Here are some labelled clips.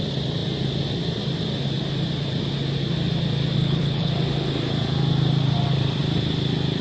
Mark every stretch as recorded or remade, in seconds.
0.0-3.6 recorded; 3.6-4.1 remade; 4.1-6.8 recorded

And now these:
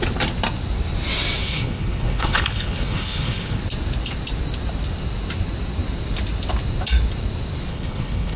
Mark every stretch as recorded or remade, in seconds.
0.0-1.4 recorded; 1.4-3.6 remade; 3.6-7.7 recorded; 7.7-8.4 remade

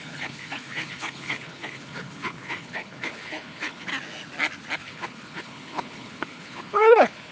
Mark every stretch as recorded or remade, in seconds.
0.0-3.9 remade; 3.9-4.8 recorded; 4.8-7.3 remade

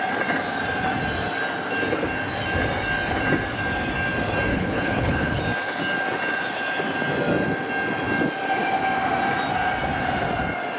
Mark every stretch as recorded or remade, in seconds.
0.0-4.5 recorded; 4.5-5.4 remade; 5.4-10.8 recorded

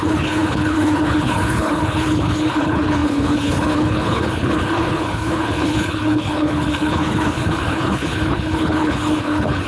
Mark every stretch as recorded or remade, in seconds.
0.0-9.7 remade